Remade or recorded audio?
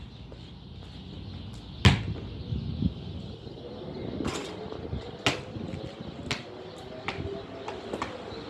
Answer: recorded